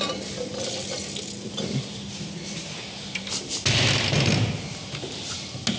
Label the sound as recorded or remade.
recorded